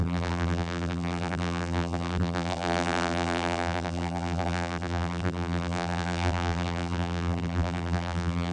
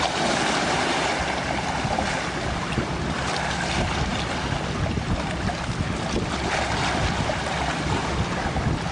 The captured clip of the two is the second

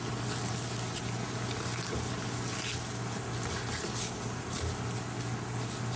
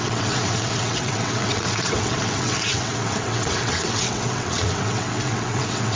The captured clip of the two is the first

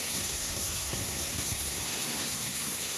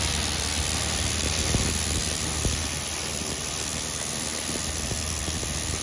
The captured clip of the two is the second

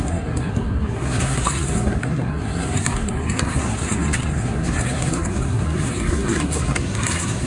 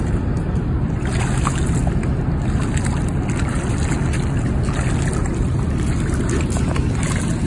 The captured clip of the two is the second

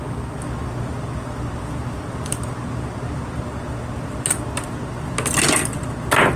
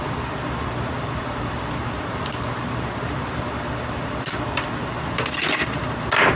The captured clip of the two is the first